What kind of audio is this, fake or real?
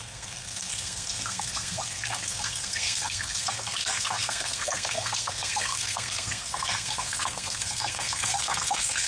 fake